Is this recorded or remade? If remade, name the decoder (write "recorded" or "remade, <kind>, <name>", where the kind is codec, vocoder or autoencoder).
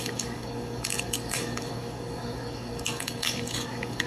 remade, codec, DAC